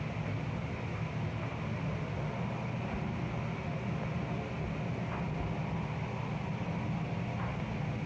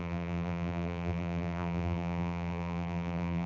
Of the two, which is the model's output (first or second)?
second